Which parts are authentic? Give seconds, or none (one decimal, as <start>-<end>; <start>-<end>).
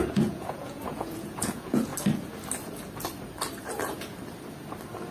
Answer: 1.9-5.1